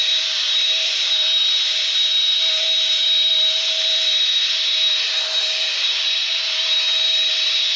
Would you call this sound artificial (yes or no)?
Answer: yes